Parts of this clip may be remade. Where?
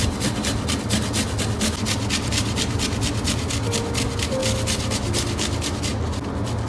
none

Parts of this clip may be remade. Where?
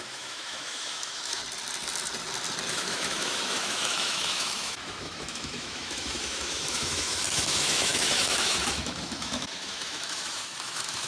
0.0-1.4 (autoencoder, DAC-VAE); 2.7-11.1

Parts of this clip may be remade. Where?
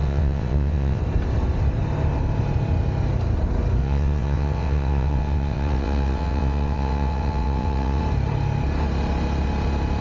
0.0-1.0 (vocoder, WaveNeXt); 3.8-8.0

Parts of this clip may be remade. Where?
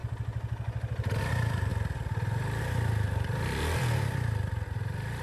1.2-1.7 (vocoder, BigVGAN v2); 2.6-5.2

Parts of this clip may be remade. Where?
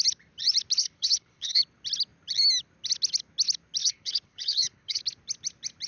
0.8-1.6 (codec, HILCodec); 3.8-5.0